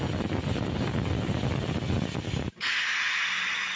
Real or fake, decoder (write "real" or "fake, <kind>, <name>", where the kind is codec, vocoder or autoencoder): real